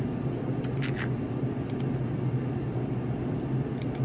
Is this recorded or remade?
recorded